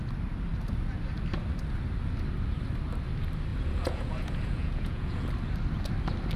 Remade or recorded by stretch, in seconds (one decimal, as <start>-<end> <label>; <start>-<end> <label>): 0.0-3.5 recorded; 3.5-5.3 remade; 5.3-6.4 recorded